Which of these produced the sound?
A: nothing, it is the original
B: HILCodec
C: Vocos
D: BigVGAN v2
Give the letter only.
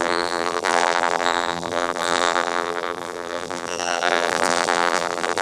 D